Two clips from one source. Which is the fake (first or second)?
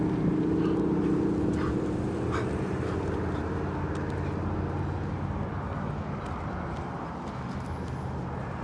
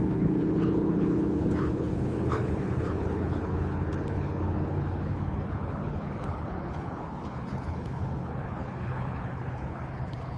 second